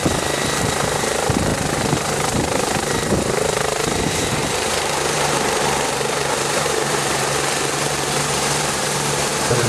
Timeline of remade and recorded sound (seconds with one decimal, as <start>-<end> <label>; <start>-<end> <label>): 0.0-1.5 remade; 1.5-2.3 recorded; 2.3-9.7 remade